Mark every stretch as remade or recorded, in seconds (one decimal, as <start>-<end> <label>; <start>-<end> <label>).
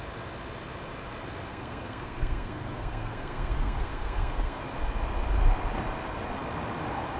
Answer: 0.0-1.5 recorded; 1.5-4.6 remade; 4.6-7.2 recorded